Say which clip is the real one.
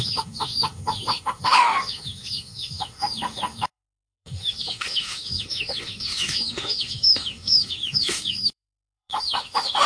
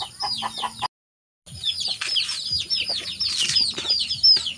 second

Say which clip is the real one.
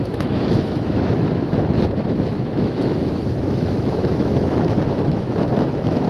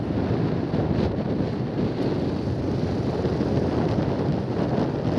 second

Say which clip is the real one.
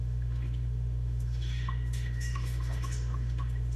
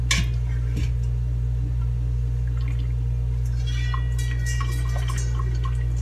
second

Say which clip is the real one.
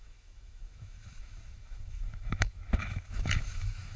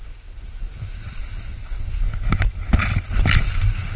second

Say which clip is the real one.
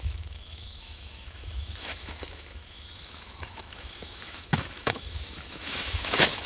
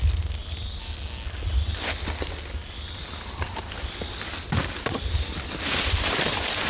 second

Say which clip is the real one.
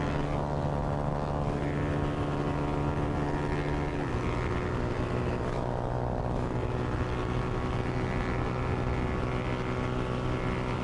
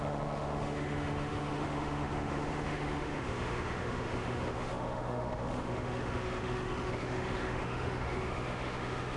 first